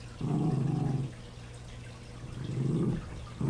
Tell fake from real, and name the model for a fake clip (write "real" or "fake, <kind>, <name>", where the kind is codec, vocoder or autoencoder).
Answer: real